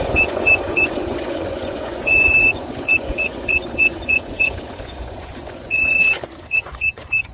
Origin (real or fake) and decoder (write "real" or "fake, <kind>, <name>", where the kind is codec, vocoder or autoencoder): fake, vocoder, Vocos